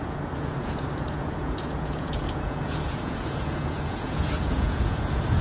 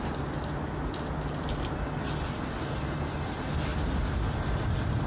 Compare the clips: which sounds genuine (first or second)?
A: second